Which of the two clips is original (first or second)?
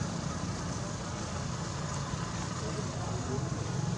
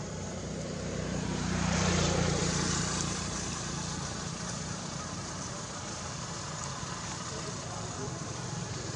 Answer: first